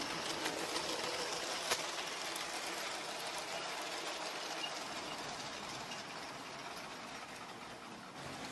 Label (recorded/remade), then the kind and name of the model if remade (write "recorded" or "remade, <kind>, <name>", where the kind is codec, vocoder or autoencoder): recorded